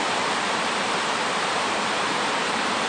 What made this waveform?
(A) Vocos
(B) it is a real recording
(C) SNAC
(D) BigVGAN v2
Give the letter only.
D